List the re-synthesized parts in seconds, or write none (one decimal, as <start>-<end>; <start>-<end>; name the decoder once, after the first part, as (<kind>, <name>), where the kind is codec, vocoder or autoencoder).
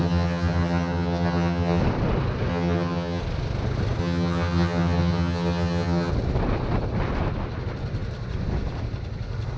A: 0.0-1.8 (vocoder, HiFi-GAN); 2.5-3.2; 4.0-6.1